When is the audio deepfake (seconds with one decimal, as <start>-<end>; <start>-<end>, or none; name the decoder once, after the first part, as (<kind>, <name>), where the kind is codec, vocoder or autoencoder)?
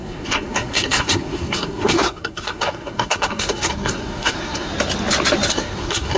0.0-4.7 (codec, SNAC); 5.5-6.2